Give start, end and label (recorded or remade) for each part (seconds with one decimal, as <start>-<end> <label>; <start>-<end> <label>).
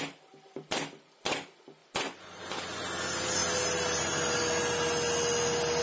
0.0-1.8 recorded; 1.8-2.4 remade; 2.4-5.8 recorded